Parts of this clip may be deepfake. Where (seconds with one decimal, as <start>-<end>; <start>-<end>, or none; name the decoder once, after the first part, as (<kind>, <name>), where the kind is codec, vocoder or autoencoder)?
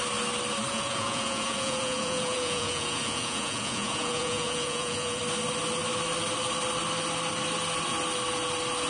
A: 0.7-5.2 (vocoder, Vocos)